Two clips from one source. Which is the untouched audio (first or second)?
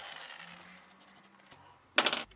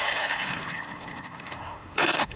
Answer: first